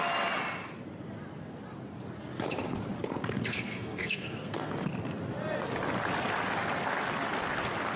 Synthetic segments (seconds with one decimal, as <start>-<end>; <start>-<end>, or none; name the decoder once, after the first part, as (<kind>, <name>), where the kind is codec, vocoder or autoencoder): 3.5-4.7 (codec, SNAC)